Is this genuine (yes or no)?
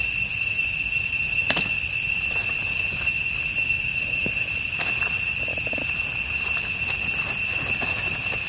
yes